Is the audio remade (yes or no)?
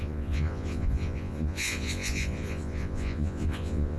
yes